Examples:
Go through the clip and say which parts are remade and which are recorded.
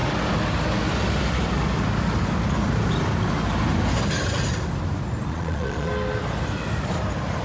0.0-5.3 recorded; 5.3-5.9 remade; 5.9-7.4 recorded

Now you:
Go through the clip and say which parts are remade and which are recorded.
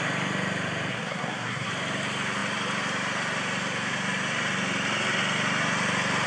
0.0-0.9 recorded; 0.9-1.7 remade; 1.7-6.3 recorded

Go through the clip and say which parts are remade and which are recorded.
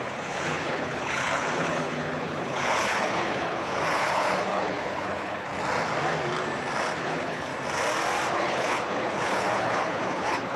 0.0-5.5 remade; 5.5-7.0 recorded; 7.0-7.5 remade; 7.5-8.3 recorded; 8.3-10.6 remade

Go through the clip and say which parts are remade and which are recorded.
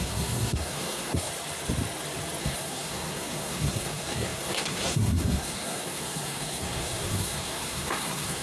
0.0-1.3 remade; 1.3-2.4 recorded; 2.4-8.4 remade